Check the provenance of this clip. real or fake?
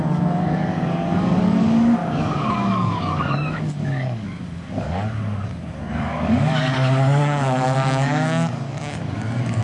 fake